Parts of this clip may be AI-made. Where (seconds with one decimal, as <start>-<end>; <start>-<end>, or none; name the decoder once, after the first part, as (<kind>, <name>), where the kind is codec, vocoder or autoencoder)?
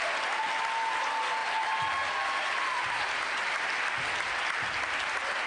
none